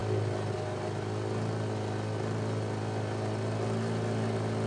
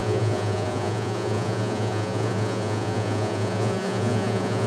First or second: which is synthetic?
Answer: second